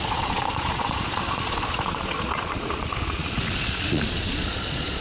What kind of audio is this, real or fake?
fake